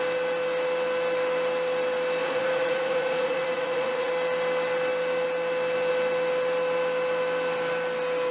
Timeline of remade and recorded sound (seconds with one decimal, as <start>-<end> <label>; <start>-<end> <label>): 0.0-2.2 recorded; 2.2-4.1 remade; 4.1-8.3 recorded